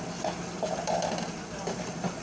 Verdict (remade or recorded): recorded